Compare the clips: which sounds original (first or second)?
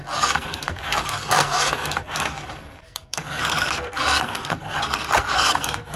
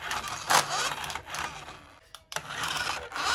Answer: second